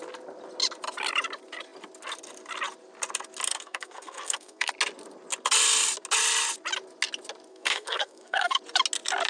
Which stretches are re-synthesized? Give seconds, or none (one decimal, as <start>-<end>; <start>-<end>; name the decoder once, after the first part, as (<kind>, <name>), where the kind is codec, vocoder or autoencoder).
3.5-4.7 (codec, SNAC); 7.5-8.6